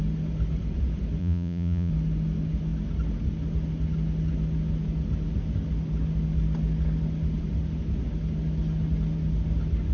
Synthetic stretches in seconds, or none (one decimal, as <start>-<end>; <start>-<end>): 1.2-1.9